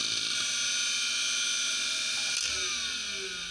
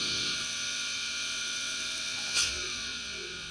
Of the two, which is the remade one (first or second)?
second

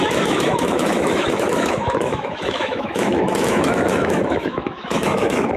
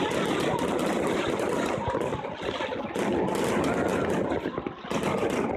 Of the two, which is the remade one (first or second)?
first